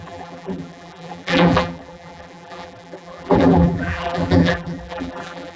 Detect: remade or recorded remade